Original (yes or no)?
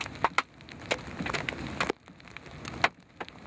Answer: yes